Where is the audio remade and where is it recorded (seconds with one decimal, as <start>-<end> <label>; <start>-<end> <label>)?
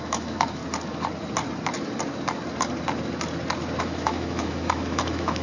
0.0-0.6 remade; 0.6-3.8 recorded; 3.8-5.4 remade